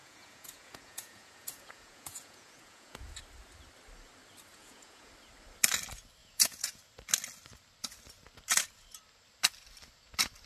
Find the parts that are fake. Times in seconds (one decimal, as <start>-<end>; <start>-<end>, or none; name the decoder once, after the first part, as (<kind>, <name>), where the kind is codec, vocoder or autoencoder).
0.0-3.2 (vocoder, Vocos); 4.5-5.1; 6.2-6.8